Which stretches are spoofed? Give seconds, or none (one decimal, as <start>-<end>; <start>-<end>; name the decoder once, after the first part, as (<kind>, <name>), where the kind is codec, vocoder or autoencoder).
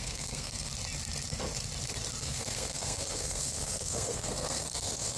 0.0-0.7 (codec, SNAC); 2.2-5.2